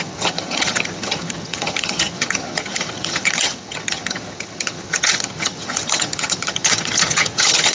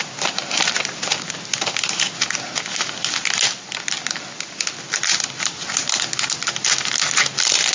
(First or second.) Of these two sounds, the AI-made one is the first